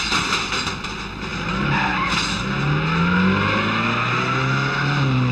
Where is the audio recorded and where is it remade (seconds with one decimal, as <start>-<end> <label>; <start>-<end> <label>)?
0.0-5.3 recorded